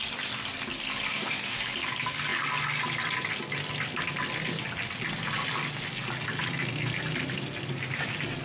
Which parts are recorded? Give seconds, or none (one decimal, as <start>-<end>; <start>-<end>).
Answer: 0.0-1.1; 1.6-8.4

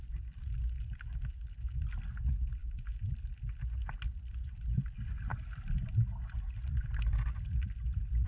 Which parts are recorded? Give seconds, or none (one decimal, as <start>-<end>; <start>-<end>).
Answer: 0.0-8.3

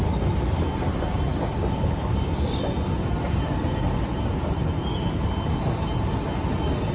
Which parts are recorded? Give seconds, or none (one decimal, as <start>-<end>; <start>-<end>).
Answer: 0.0-1.3; 2.6-6.9

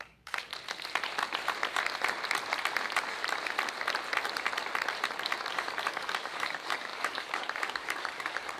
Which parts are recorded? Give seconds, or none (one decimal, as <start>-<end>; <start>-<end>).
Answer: 0.5-5.5

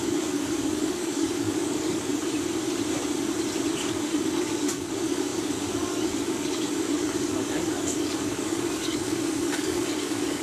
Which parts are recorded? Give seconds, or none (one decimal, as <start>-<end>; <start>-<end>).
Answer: 2.1-3.7

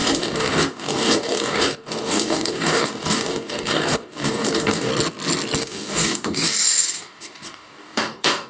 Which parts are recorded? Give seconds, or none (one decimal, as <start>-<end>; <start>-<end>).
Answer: 4.9-5.6

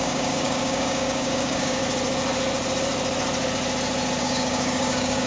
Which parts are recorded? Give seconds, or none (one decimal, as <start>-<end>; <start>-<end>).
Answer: 1.8-4.2